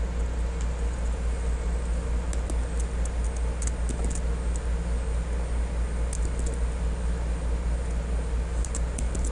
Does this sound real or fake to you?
real